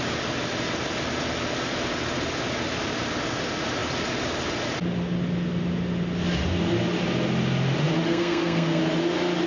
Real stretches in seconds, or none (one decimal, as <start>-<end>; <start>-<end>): 0.0-8.1; 8.8-9.5